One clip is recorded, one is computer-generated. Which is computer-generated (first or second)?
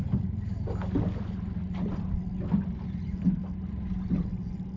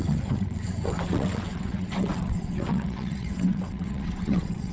second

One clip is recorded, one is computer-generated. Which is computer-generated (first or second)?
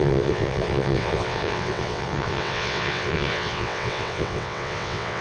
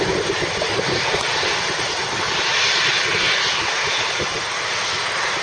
first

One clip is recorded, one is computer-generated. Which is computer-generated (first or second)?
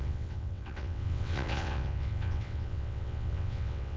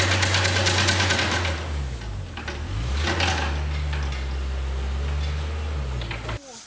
first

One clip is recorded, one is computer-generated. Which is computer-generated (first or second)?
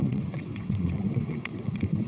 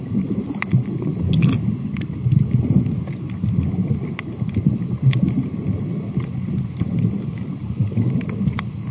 first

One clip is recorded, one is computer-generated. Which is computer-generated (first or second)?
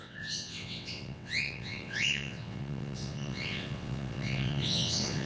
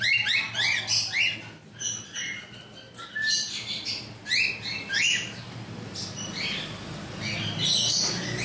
first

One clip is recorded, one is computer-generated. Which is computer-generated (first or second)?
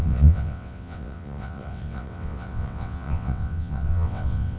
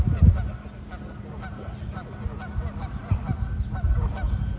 first